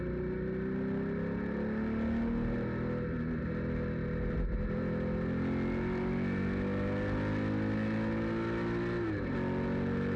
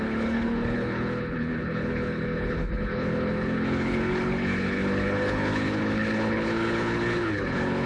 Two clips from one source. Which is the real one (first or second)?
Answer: first